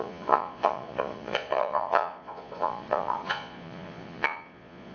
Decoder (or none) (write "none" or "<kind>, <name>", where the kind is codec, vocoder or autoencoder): vocoder, Vocos